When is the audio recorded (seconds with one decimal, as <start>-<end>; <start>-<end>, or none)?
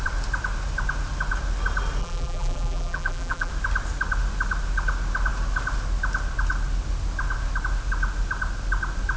0.0-2.0; 3.5-9.2